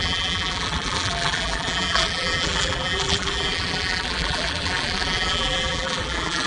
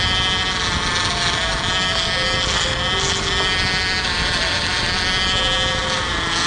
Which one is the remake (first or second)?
first